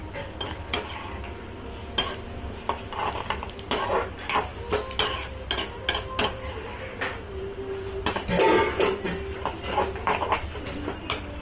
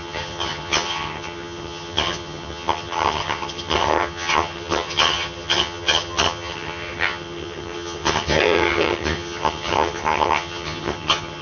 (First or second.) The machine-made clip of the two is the second